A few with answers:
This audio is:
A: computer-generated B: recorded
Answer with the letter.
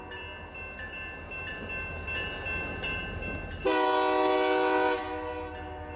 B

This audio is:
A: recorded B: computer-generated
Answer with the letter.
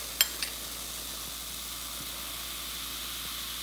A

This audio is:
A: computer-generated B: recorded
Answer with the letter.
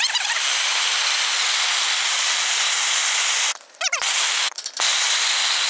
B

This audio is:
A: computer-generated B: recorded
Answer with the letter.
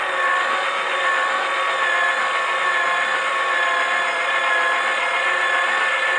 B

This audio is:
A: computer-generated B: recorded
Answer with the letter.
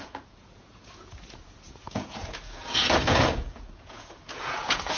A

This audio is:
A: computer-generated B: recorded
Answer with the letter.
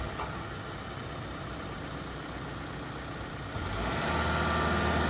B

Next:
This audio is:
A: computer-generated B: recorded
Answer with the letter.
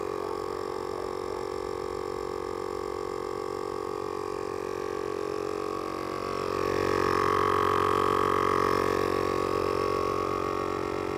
B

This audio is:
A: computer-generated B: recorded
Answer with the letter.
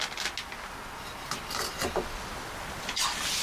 B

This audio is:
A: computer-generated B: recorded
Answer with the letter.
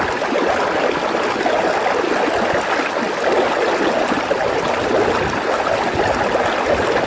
B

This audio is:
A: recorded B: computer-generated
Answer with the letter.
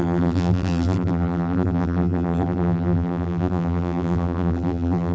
B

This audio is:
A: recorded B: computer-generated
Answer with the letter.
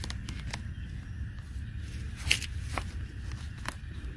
A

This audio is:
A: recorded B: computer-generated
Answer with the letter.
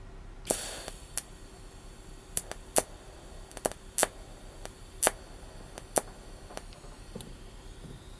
A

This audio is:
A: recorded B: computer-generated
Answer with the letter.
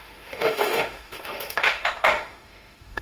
B